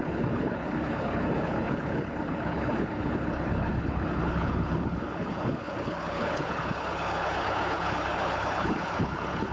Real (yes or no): no